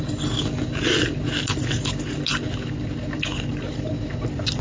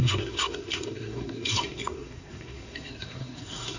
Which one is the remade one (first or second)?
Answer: second